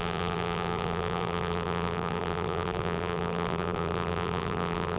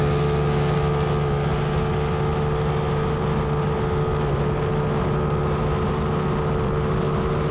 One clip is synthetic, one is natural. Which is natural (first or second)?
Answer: second